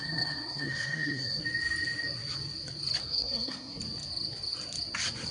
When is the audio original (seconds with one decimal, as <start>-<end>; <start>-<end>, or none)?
1.4-3.0; 3.8-5.3